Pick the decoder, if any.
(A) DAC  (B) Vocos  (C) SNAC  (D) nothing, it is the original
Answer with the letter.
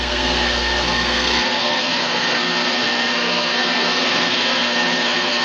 C